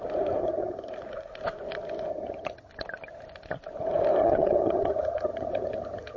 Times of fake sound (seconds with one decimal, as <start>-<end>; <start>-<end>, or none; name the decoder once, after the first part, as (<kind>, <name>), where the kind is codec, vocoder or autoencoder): 0.4-0.9 (vocoder, HiFi-GAN); 2.1-2.7; 4.2-6.2

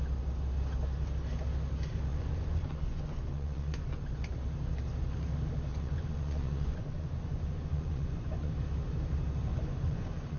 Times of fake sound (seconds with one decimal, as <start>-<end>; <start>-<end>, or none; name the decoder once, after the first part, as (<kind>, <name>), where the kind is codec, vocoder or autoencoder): 2.1-4.2 (vocoder, Vocos); 5.7-8.5; 9.5-10.4

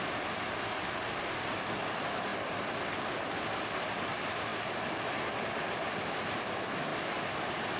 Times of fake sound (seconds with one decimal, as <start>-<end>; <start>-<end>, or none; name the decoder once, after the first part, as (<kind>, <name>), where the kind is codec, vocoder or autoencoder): 4.5-5.2 (vocoder, BigVGAN v2); 6.9-7.8